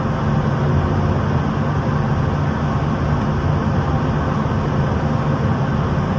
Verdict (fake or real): real